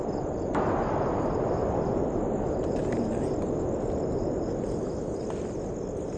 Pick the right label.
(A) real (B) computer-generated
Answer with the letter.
A